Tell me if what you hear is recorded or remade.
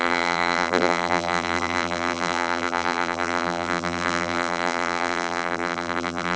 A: remade